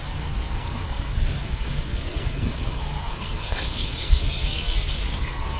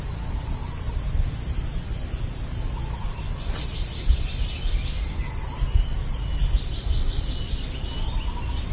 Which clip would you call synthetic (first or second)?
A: first